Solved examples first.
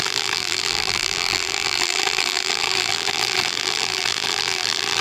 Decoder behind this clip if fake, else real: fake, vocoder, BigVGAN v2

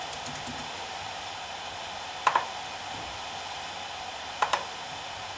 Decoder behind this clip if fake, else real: real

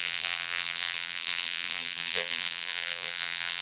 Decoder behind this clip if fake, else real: fake, vocoder, BigVGAN v2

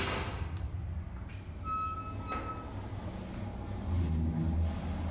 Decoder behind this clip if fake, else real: real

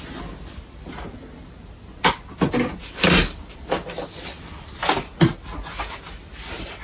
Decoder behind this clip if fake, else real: real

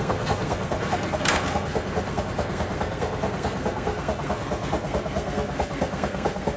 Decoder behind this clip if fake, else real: fake, codec, SNAC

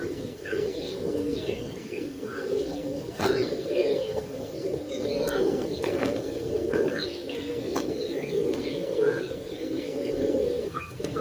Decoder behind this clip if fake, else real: fake, codec, SNAC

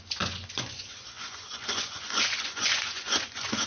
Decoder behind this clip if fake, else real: fake, vocoder, Vocos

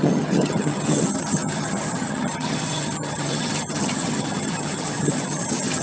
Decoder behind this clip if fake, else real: fake, vocoder, HiFi-GAN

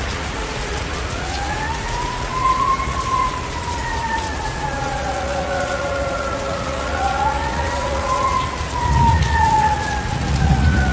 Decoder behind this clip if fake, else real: fake, vocoder, Vocos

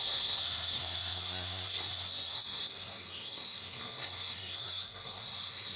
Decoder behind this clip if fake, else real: fake, codec, SNAC